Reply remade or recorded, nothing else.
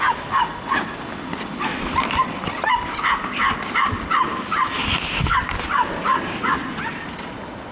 recorded